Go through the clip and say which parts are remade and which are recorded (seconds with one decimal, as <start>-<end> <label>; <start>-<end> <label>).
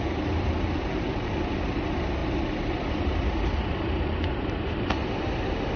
0.0-5.8 recorded